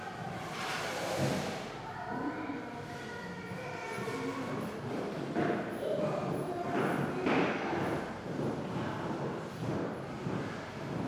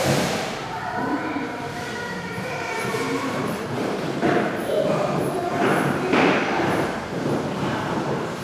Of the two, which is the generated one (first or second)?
second